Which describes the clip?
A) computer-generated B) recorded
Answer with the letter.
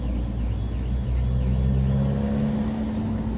B